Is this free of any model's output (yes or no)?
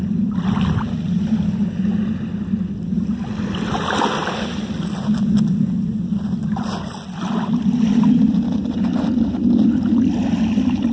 yes